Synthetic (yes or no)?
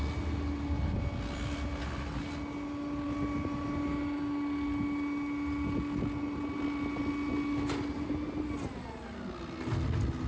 no